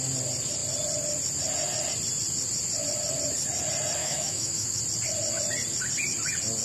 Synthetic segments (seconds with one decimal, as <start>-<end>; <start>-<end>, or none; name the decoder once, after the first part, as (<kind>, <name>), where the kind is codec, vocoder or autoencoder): 4.0-4.8 (autoencoder, DAC-VAE)